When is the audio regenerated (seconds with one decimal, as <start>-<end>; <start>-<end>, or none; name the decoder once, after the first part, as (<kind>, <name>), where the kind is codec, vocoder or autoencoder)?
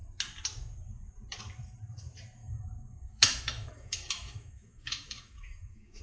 2.4-6.0 (autoencoder, DAC-VAE)